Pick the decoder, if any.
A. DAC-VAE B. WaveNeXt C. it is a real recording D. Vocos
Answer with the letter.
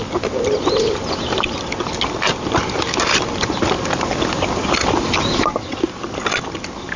C